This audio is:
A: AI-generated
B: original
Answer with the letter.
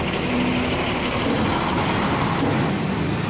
B